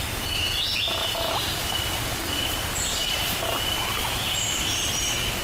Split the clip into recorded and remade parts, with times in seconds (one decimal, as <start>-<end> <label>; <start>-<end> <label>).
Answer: 0.0-1.0 recorded; 1.0-2.5 remade; 2.5-3.0 recorded; 3.0-5.4 remade

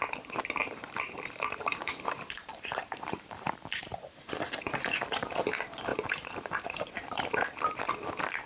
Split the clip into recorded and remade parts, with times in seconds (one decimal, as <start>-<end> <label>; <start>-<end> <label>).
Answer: 0.0-0.6 recorded; 0.6-5.3 remade; 5.3-5.9 recorded; 5.9-7.8 remade; 7.8-8.5 recorded

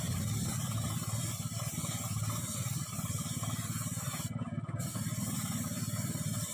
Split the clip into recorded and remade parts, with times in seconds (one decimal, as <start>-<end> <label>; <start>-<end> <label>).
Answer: 0.0-6.5 recorded

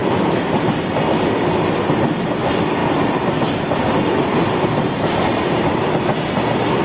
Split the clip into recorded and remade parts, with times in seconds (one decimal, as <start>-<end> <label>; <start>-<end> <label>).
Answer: 0.0-2.8 recorded; 2.8-4.9 remade; 4.9-6.8 recorded

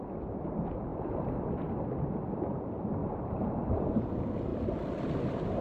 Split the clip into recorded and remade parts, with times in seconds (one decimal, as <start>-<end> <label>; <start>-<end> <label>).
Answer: 0.0-0.9 recorded; 0.9-1.5 remade; 1.5-3.0 recorded; 3.0-3.7 remade; 3.7-5.6 recorded

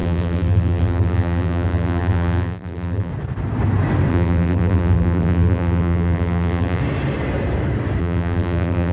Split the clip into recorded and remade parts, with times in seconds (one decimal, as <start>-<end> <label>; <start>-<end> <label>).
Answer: 0.0-3.1 remade; 3.1-4.1 recorded; 4.1-6.8 remade; 6.8-8.0 recorded; 8.0-8.9 remade